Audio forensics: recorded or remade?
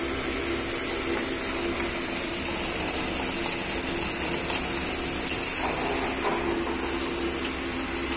recorded